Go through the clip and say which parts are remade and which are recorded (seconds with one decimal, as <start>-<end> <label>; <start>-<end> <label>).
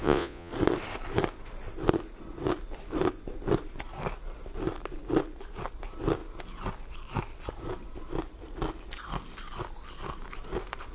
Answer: 0.0-0.5 remade; 0.5-10.9 recorded